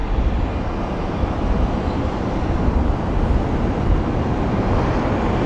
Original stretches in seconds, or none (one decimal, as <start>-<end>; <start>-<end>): 0.0-5.5